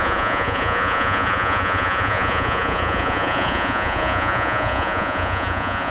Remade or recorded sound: remade